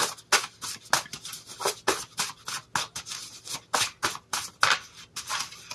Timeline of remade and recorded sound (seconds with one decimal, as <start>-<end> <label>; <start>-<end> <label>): 0.0-5.7 recorded